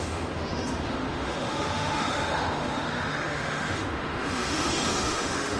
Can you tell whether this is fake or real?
fake